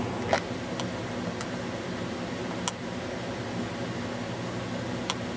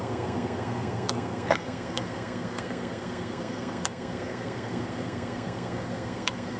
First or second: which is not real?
second